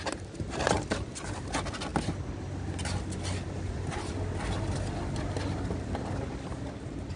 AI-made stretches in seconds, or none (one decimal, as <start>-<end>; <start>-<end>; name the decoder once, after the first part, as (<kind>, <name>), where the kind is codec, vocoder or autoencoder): none